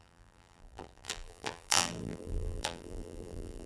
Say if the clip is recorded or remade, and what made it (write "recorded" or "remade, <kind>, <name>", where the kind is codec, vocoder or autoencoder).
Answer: remade, vocoder, BigVGAN v2